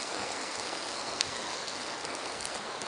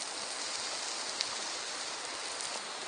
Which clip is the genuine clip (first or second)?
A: second